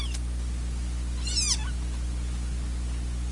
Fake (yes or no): no